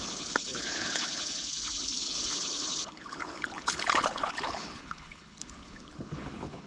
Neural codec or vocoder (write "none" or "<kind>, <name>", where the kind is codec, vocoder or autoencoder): codec, HILCodec